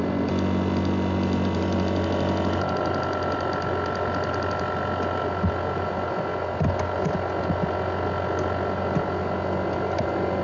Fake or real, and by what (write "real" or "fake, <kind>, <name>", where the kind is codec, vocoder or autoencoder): real